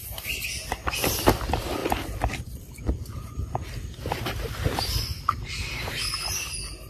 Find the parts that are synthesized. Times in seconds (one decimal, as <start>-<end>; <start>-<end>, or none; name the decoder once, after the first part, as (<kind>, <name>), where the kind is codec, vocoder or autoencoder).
1.8-5.9 (vocoder, BigVGAN v2)